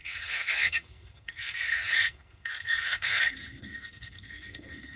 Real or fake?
fake